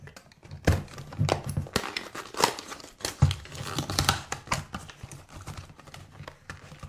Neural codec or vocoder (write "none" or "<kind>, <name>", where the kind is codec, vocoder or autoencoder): none